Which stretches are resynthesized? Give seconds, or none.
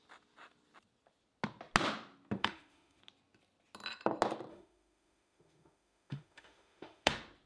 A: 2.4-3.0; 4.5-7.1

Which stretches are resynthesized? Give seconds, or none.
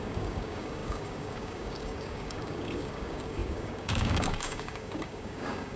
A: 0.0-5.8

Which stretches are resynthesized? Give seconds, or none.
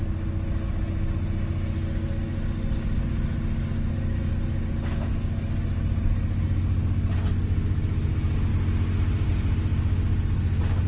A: none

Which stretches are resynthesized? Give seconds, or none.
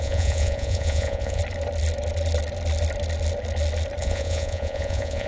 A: 0.0-1.4; 4.0-5.3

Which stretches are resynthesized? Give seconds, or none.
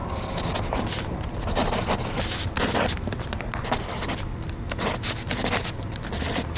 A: 0.0-3.5